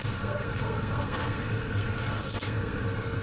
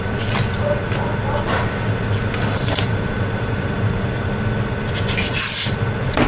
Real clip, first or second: second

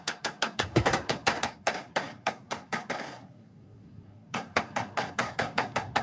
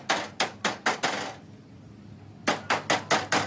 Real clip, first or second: second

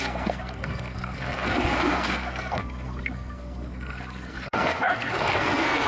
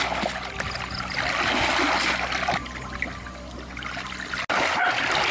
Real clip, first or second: second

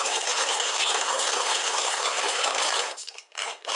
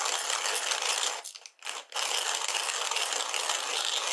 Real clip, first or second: second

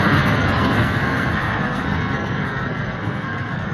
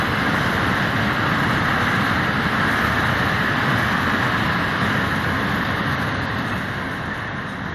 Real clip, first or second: second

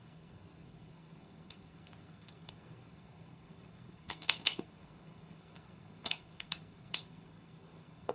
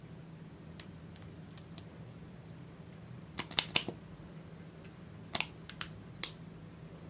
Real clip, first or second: second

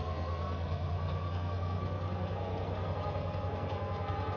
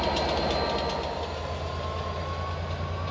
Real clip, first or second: second